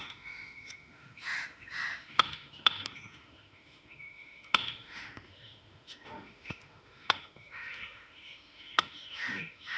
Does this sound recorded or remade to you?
remade